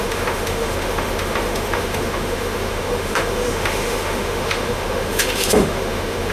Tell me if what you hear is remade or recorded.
remade